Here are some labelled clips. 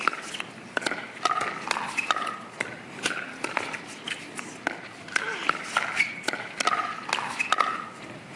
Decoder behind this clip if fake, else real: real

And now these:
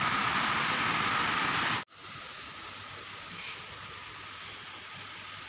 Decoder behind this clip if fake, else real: real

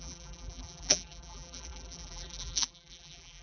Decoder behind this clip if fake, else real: fake, vocoder, BigVGAN v2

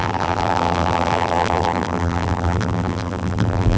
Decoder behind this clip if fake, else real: fake, vocoder, BigVGAN v2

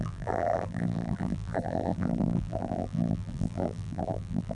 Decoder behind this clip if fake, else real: fake, vocoder, BigVGAN v2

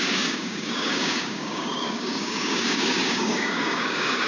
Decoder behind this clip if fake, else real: fake, codec, DAC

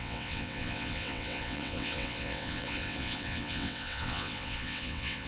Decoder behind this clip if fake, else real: fake, vocoder, WaveNeXt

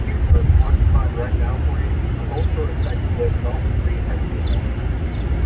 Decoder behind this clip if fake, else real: real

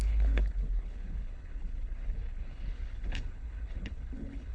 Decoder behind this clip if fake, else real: fake, codec, HILCodec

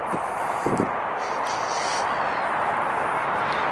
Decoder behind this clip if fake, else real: real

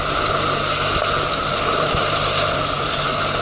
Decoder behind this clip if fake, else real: real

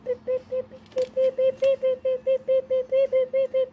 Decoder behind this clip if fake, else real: real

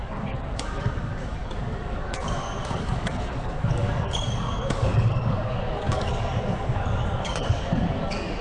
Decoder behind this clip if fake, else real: fake, codec, DAC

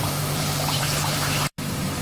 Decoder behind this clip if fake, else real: fake, vocoder, BigVGAN v2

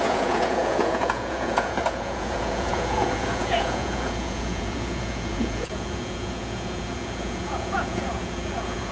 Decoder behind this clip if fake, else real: fake, vocoder, Vocos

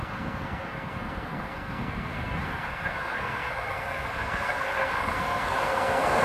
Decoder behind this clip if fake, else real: fake, codec, SNAC